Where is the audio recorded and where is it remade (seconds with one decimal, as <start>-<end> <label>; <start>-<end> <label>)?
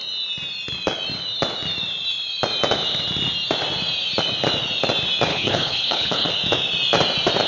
0.0-5.3 recorded; 5.3-6.3 remade; 6.3-7.5 recorded